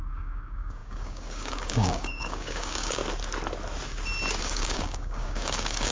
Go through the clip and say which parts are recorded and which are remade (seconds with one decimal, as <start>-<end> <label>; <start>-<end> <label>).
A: 0.0-3.0 remade; 3.0-4.4 recorded; 4.4-5.9 remade